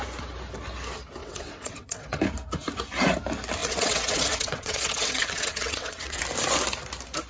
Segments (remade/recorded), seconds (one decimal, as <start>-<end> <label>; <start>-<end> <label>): 0.0-1.2 recorded; 1.2-2.2 remade; 2.2-3.6 recorded; 3.6-6.2 remade; 6.2-7.3 recorded

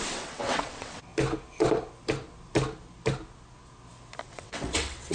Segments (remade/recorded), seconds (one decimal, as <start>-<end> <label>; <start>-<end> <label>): 0.0-1.1 remade; 1.1-4.2 recorded; 4.2-5.1 remade

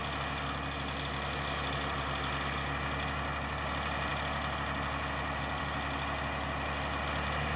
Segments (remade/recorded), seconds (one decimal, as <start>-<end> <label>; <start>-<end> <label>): 0.0-7.6 recorded

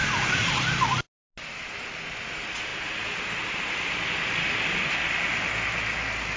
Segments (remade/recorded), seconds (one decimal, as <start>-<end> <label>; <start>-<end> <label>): 0.0-6.4 recorded

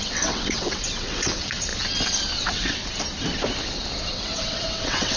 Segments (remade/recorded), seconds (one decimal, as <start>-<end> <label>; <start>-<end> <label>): 0.0-1.7 remade; 1.7-2.4 recorded; 2.4-2.8 remade; 2.8-4.1 recorded; 4.1-5.2 remade

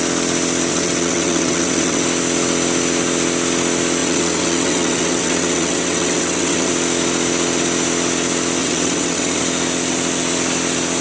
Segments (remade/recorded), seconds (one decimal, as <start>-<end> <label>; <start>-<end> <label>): 0.0-0.7 recorded; 0.7-2.0 remade; 2.0-4.0 recorded; 4.0-6.7 remade; 6.7-8.6 recorded; 8.6-9.4 remade; 9.4-11.0 recorded

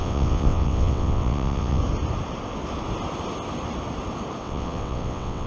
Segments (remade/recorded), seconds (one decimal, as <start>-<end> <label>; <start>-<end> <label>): 0.0-1.8 remade; 1.8-4.4 recorded; 4.4-5.5 remade